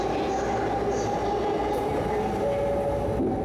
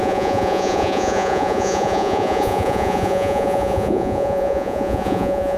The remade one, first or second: second